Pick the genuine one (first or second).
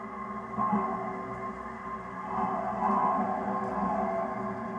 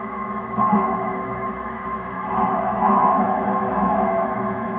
first